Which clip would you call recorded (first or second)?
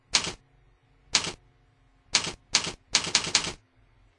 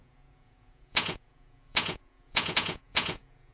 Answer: first